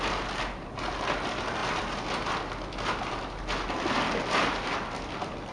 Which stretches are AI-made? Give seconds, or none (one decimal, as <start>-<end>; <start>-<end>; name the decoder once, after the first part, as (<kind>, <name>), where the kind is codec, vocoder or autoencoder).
none